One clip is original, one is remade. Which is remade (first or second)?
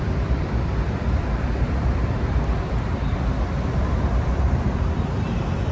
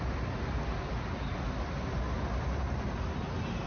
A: first